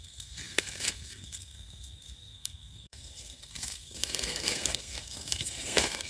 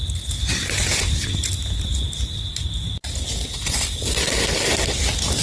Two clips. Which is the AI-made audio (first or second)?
first